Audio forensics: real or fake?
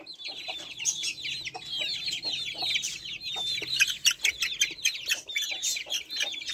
real